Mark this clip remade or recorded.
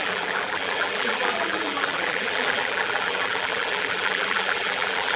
remade